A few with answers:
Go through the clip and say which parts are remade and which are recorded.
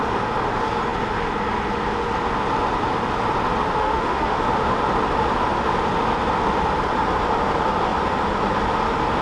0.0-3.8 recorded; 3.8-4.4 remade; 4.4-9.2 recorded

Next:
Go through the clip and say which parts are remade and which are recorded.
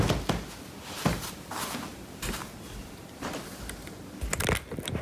0.0-5.0 recorded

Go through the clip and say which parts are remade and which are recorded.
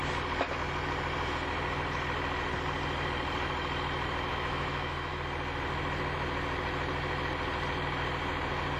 0.0-4.3 recorded; 4.3-5.1 remade; 5.1-8.8 recorded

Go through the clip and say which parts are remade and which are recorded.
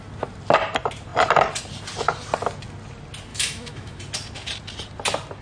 0.0-3.3 recorded; 3.3-4.0 remade; 4.0-5.4 recorded